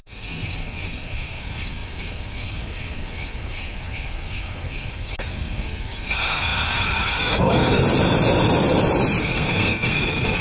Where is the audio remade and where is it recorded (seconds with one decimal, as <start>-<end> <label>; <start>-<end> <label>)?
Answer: 0.0-7.8 remade; 7.8-9.2 recorded; 9.2-10.4 remade